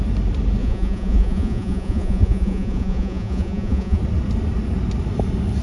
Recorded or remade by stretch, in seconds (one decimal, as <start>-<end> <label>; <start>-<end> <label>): 0.0-0.6 recorded; 0.6-4.0 remade; 4.0-5.6 recorded